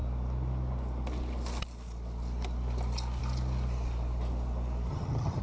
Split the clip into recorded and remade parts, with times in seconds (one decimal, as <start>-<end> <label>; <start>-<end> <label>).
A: 0.0-4.9 recorded; 4.9-5.4 remade